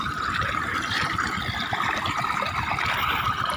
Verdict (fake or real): fake